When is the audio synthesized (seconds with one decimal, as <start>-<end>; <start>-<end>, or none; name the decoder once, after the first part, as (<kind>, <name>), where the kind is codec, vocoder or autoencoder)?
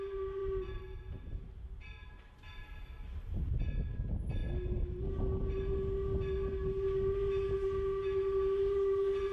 none